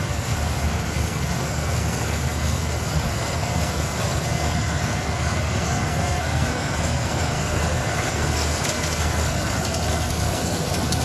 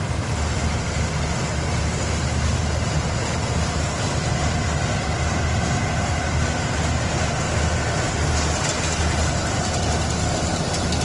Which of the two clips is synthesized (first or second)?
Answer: first